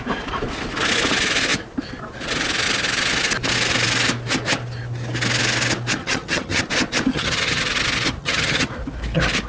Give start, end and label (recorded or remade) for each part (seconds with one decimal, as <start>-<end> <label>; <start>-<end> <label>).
0.0-6.0 recorded; 6.0-6.6 remade; 6.6-7.1 recorded; 7.1-7.6 remade; 7.6-8.2 recorded; 8.2-8.7 remade; 8.7-9.5 recorded